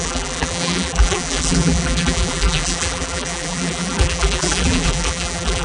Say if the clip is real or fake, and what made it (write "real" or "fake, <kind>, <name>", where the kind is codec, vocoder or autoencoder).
fake, vocoder, BigVGAN v2